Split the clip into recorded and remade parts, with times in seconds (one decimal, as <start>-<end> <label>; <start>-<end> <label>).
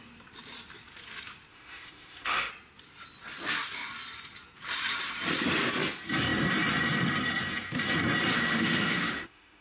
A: 0.0-1.5 recorded; 1.5-2.5 remade; 2.5-8.3 recorded; 8.3-9.6 remade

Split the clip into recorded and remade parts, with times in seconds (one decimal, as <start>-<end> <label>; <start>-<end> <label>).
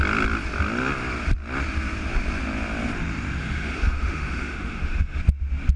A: 0.0-3.4 recorded; 3.4-5.2 remade; 5.2-5.8 recorded